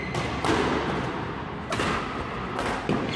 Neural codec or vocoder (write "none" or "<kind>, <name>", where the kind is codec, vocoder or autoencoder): none